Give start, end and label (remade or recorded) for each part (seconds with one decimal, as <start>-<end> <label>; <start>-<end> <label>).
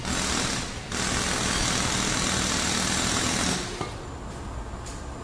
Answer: 0.0-5.2 recorded